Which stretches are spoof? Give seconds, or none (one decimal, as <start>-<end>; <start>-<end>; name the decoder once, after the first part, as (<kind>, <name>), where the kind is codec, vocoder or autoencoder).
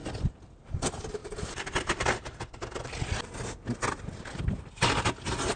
none